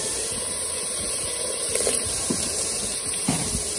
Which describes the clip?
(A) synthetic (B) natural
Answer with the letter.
A